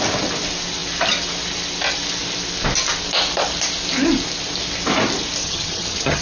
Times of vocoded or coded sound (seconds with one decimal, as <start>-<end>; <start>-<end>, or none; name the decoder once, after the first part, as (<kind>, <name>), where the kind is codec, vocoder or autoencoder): 5.4-6.2 (vocoder, HiFi-GAN)